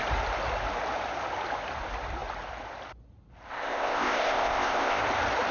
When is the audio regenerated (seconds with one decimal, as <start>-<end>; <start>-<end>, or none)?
3.5-5.0

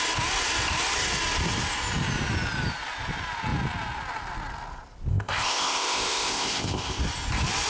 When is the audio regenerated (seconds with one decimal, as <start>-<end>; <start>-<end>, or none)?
5.1-7.0

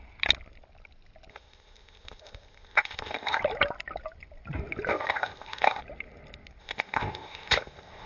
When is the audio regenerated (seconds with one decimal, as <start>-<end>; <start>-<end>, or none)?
1.3-3.4; 4.9-5.8; 6.6-8.1

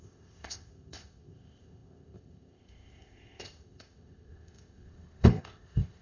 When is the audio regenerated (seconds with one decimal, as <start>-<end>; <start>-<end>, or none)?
0.0-6.0

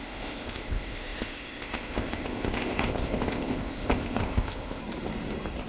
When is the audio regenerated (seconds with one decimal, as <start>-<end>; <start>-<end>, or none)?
0.0-4.8